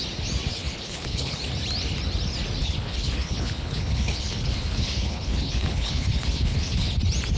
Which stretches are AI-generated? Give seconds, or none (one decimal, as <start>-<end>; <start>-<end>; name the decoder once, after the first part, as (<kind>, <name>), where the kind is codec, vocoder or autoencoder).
0.5-1.4 (codec, HILCodec); 2.6-6.9